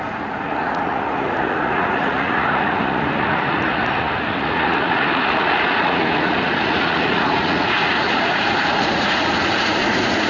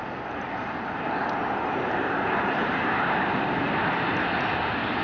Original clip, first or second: second